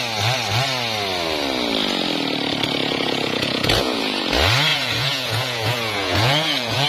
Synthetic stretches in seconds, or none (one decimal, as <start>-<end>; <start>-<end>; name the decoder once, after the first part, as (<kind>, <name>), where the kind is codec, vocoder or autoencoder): 2.8-4.2 (vocoder, Vocos); 4.7-6.9